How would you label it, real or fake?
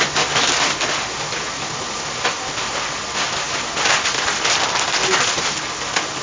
real